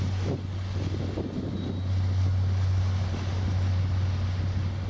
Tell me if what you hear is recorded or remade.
recorded